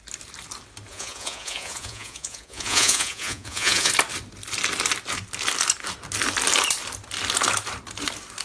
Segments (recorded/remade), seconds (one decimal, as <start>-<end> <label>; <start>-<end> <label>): 0.0-0.9 recorded; 0.9-3.9 remade; 3.9-8.4 recorded